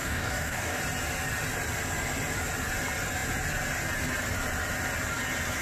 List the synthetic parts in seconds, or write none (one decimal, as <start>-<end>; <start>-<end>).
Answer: 0.0-0.8